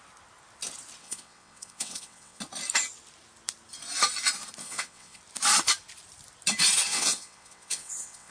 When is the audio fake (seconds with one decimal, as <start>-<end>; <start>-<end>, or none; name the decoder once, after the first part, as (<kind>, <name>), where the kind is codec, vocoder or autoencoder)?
1.0-2.4 (vocoder, WaveNeXt); 4.6-5.2; 6.9-8.3